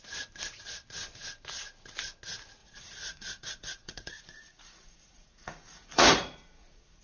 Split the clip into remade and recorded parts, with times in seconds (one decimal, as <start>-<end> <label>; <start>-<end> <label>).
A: 0.0-2.6 recorded; 2.6-7.0 remade